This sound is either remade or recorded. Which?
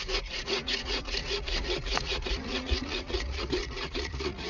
remade